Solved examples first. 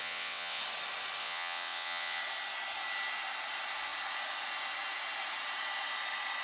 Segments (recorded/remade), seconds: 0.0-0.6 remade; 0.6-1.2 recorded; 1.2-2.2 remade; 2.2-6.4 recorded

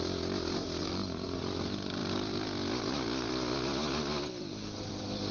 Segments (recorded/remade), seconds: 0.0-0.8 recorded; 0.8-1.4 remade; 1.4-5.3 recorded

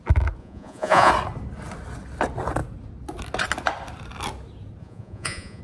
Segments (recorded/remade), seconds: 0.0-0.4 recorded; 0.4-1.1 remade; 1.1-4.8 recorded; 4.8-5.6 remade

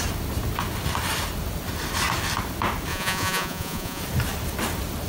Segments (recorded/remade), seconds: 0.0-2.9 recorded; 2.9-4.0 remade; 4.0-5.1 recorded

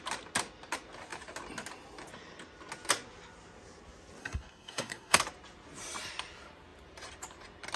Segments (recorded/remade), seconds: 0.0-4.2 recorded; 4.2-5.2 remade; 5.2-7.8 recorded